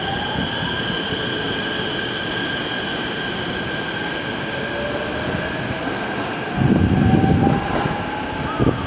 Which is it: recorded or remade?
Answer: recorded